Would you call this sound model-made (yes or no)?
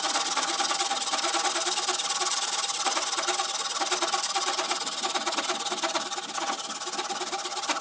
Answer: no